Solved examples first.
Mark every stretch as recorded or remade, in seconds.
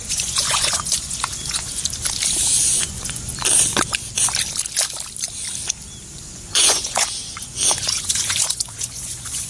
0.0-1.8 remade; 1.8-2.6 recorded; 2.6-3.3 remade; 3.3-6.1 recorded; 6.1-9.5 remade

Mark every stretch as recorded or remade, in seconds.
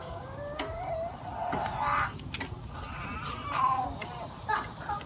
0.0-0.6 remade; 0.6-5.1 recorded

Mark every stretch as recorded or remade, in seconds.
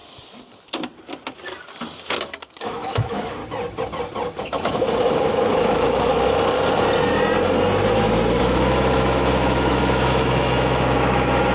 0.0-2.2 recorded; 2.2-3.4 remade; 3.4-4.4 recorded; 4.4-6.1 remade; 6.1-8.4 recorded; 8.4-11.5 remade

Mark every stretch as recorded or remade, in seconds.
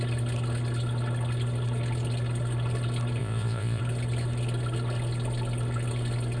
0.0-3.2 recorded; 3.2-3.8 remade; 3.8-6.4 recorded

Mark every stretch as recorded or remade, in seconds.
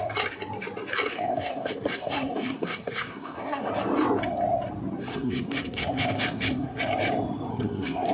0.0-1.1 recorded; 1.1-3.7 remade; 3.7-5.1 recorded; 5.1-6.8 remade; 6.8-7.5 recorded; 7.5-8.1 remade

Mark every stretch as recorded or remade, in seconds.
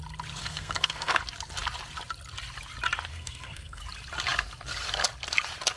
0.0-0.4 recorded; 0.4-1.2 remade; 1.2-3.1 recorded; 3.1-3.8 remade; 3.8-5.8 recorded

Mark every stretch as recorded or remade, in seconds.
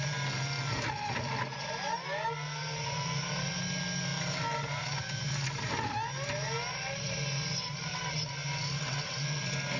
0.0-8.8 recorded; 8.8-9.4 remade; 9.4-9.8 recorded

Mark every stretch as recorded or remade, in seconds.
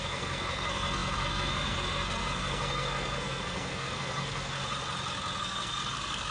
0.0-4.6 remade; 4.6-5.4 recorded; 5.4-6.3 remade